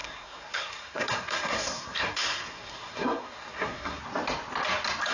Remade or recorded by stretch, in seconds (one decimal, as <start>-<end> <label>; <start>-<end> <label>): 0.0-4.0 remade; 4.0-5.1 recorded